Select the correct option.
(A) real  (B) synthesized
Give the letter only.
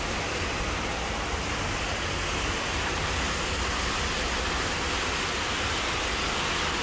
A